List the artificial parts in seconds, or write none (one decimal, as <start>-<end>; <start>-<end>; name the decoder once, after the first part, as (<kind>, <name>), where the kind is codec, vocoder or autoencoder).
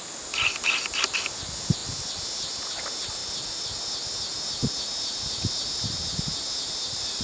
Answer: none